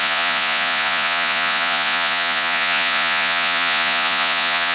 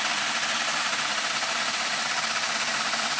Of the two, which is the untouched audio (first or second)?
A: second